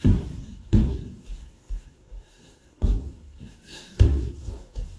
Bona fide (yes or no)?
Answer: no